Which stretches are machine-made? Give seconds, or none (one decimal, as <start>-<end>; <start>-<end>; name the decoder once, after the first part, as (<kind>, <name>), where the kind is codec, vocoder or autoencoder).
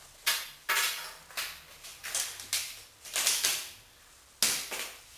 none